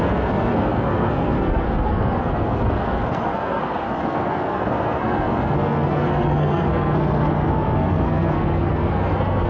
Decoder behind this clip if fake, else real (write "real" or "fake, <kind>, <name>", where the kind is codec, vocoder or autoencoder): fake, codec, SNAC